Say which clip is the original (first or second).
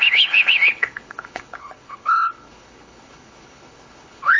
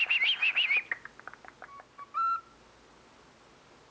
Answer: second